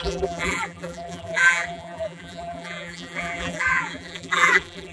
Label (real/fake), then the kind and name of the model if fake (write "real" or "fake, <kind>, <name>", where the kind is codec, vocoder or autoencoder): fake, vocoder, BigVGAN v2